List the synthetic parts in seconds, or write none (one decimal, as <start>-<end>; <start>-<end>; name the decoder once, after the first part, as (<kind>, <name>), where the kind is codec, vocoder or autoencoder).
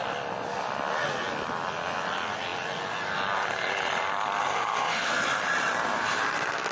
4.4-5.1 (codec, SNAC)